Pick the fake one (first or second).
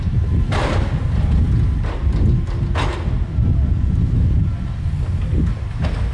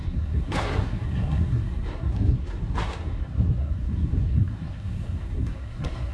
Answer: second